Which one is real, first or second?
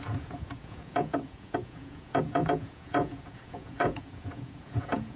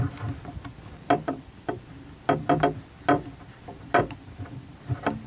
second